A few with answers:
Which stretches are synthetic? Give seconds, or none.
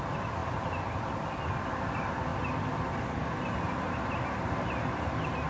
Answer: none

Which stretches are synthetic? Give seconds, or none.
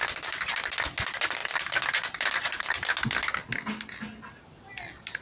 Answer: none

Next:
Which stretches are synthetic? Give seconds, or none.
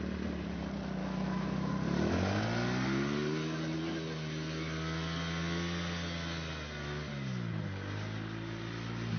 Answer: 1.0-1.7 (autoencoder, DAC-VAE)